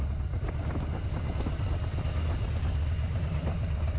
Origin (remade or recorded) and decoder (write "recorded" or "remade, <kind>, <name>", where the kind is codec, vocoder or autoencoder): recorded